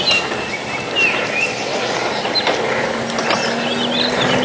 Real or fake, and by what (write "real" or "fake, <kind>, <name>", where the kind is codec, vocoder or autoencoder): real